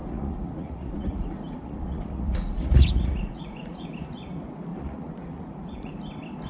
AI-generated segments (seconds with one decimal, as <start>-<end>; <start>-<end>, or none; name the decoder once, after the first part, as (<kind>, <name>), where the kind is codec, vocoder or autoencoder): 0.0-3.9 (vocoder, Vocos); 4.7-5.9